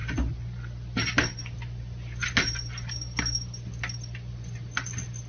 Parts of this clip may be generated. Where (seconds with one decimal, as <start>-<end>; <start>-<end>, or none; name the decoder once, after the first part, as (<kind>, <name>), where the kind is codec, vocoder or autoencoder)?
none